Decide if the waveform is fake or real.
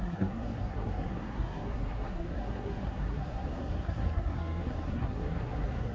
fake